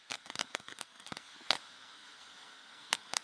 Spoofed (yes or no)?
yes